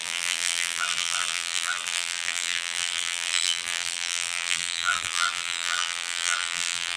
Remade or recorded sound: remade